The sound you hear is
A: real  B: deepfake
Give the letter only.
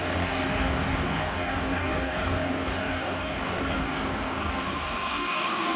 B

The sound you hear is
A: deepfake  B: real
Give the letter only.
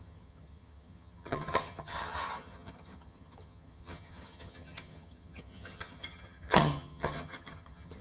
A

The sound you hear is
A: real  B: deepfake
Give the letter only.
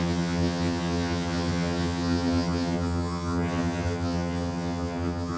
B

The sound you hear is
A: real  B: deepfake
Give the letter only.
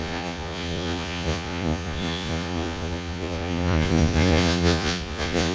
B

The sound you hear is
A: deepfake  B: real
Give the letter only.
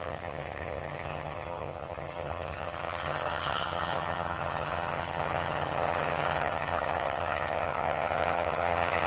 A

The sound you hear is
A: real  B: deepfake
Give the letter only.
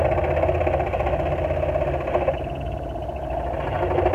A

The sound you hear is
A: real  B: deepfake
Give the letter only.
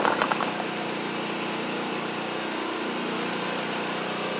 B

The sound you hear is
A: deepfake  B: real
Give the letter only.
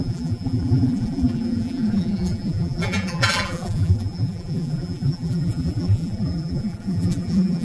A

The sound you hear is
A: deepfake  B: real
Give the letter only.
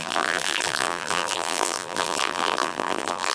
A